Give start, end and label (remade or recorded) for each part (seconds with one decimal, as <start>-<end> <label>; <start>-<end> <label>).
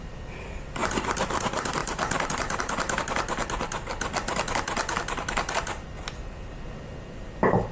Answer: 0.0-0.8 recorded; 0.8-1.4 remade; 1.4-1.8 recorded; 1.8-2.6 remade; 2.6-7.7 recorded